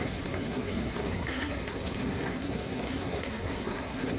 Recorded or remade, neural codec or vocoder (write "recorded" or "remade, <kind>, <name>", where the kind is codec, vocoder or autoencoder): remade, codec, SNAC